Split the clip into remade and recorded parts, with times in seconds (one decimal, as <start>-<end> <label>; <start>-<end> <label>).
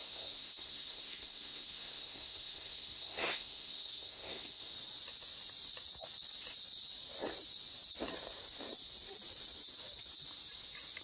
0.0-4.7 remade; 4.7-11.0 recorded